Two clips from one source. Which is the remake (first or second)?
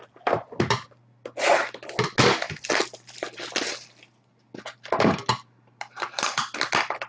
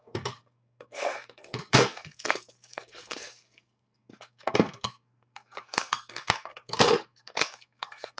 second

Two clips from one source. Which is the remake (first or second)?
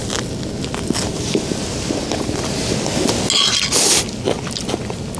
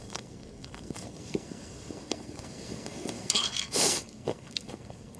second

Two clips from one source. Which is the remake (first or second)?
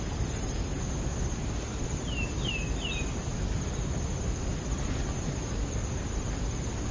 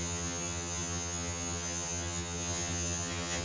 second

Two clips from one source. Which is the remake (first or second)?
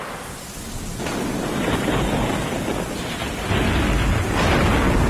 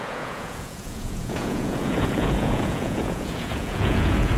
second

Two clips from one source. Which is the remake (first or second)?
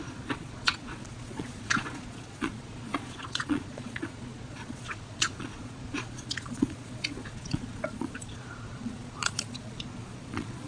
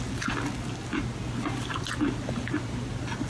first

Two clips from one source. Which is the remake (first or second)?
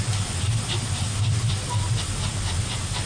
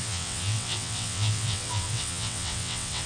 second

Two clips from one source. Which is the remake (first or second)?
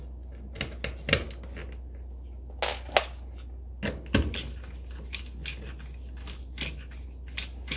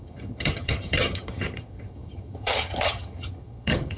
second